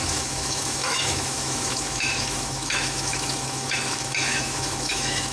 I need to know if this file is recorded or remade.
remade